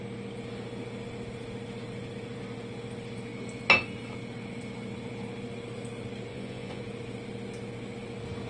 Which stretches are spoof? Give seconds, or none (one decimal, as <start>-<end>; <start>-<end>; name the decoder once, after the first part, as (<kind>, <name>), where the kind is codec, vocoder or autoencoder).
6.3-6.8 (vocoder, Vocos)